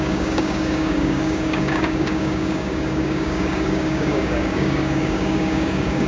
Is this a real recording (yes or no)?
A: no